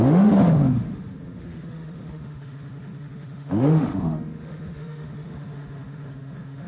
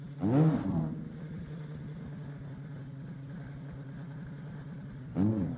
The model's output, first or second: first